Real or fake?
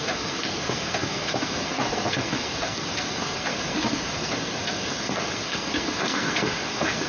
fake